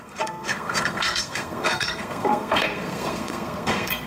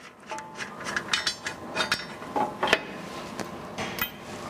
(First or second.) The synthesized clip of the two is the first